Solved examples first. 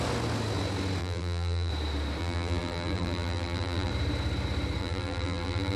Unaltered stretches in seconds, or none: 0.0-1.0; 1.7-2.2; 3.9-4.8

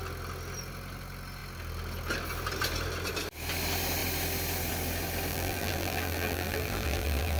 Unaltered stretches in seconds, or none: 0.0-5.3

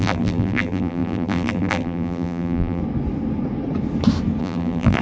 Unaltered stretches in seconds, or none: 2.8-4.4